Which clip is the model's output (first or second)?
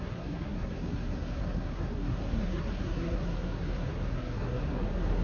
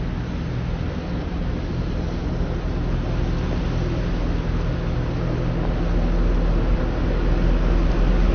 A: first